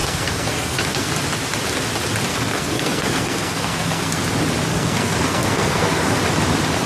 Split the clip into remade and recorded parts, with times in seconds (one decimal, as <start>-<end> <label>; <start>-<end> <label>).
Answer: 0.0-1.1 remade; 1.1-2.3 recorded; 2.3-4.2 remade; 4.2-4.7 recorded; 4.7-6.2 remade; 6.2-6.9 recorded